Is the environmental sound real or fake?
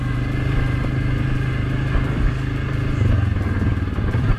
real